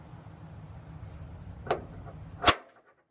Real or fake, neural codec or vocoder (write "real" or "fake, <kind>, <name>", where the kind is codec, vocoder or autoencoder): real